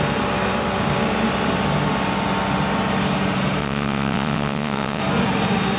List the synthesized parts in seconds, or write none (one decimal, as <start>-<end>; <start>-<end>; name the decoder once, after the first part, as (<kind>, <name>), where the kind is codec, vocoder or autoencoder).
3.6-5.0 (vocoder, WaveNeXt)